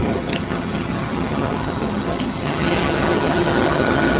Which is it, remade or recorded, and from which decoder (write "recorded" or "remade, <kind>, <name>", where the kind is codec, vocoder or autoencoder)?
remade, vocoder, HiFi-GAN